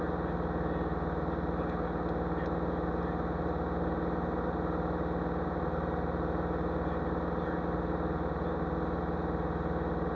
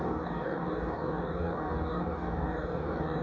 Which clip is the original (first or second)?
first